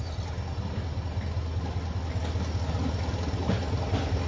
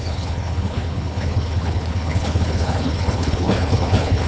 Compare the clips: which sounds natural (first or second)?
first